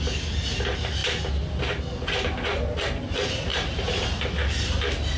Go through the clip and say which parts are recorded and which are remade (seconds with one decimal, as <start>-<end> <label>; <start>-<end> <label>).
0.0-3.5 recorded; 3.5-4.2 remade; 4.2-5.2 recorded